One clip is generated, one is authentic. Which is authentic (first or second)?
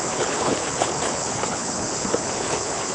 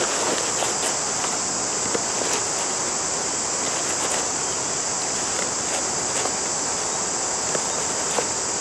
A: second